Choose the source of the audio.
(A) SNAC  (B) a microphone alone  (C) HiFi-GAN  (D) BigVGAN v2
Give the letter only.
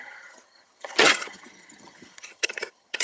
C